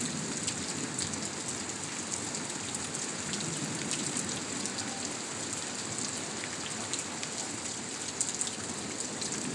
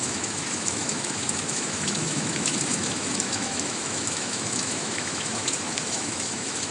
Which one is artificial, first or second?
second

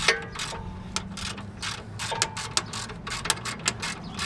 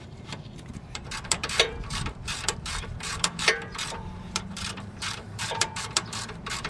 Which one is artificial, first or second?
second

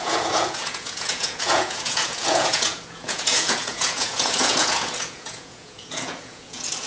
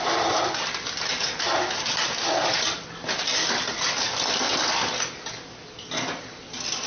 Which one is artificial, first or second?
first